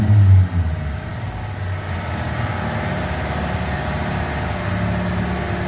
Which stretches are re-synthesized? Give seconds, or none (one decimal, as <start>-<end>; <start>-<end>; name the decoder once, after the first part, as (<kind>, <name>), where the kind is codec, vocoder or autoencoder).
none